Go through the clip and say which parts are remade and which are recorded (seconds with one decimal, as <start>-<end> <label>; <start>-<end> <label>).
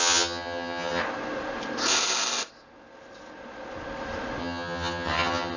0.0-1.0 remade; 1.0-4.4 recorded; 4.4-5.6 remade